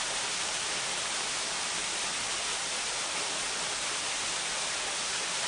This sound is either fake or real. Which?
real